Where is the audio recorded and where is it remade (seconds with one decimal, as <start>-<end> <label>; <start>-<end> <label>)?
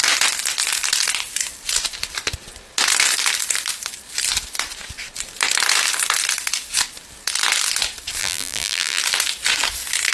0.0-8.2 recorded; 8.2-9.0 remade; 9.0-10.1 recorded